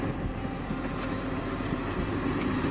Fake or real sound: real